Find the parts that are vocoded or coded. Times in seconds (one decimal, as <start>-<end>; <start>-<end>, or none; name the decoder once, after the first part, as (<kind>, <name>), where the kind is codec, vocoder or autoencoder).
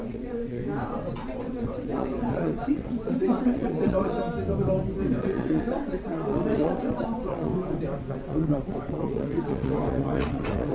0.0-0.6 (vocoder, WaveNeXt); 1.4-4.2; 5.2-7.5; 8.1-10.7